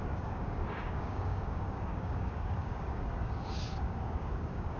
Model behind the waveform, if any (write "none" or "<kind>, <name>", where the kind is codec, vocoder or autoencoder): codec, DAC